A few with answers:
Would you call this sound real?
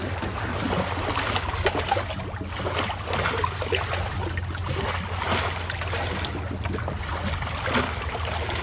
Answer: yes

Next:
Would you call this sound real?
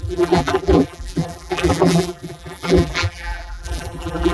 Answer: no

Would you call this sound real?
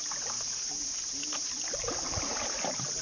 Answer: no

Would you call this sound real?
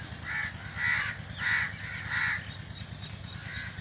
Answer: yes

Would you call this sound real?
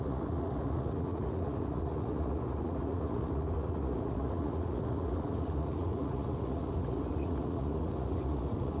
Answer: no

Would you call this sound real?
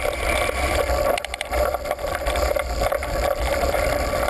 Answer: no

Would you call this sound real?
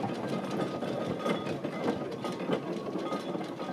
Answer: yes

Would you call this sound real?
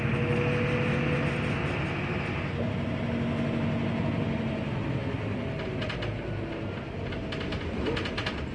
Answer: yes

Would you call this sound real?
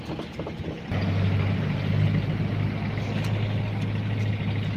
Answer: yes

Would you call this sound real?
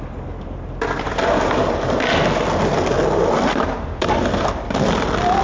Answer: yes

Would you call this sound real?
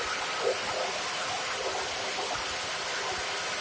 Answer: yes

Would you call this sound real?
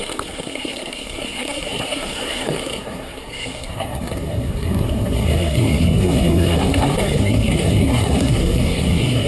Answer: no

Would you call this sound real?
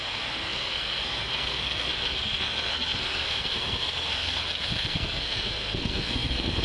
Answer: no